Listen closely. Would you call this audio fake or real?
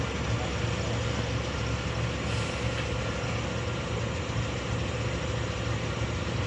real